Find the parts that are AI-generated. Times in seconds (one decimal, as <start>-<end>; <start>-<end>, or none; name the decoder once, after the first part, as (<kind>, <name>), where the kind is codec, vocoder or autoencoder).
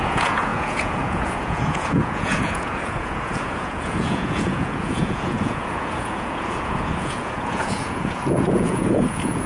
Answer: 0.0-9.5 (vocoder, Vocos)